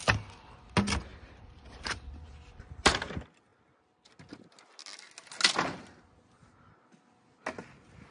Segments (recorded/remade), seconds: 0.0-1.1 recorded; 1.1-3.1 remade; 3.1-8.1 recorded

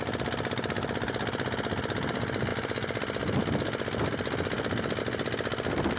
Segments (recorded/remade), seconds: 0.0-2.5 recorded; 2.5-5.0 remade; 5.0-6.0 recorded

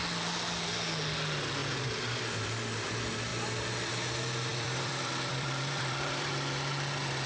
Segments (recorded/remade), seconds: 0.0-4.5 recorded; 4.5-6.3 remade; 6.3-7.3 recorded

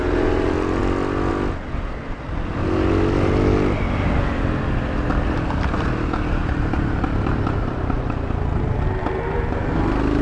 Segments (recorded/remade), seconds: 0.0-6.4 recorded; 6.4-9.7 remade; 9.7-10.2 recorded

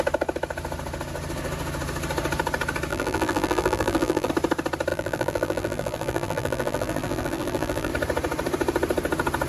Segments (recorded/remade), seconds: 0.0-2.9 recorded; 2.9-4.3 remade; 4.3-4.9 recorded; 4.9-7.9 remade; 7.9-9.5 recorded

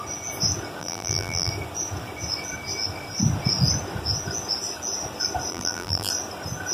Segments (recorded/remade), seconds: 0.0-0.8 recorded; 0.8-1.5 remade; 1.5-5.5 recorded; 5.5-6.1 remade; 6.1-6.7 recorded

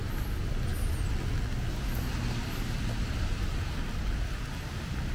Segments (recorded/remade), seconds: 0.0-5.1 recorded

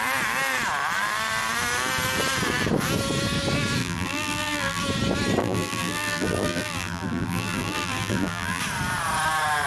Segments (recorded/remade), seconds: 0.0-3.8 recorded; 3.8-4.8 remade; 4.8-5.4 recorded; 5.4-8.6 remade; 8.6-9.7 recorded